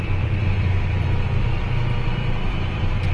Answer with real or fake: fake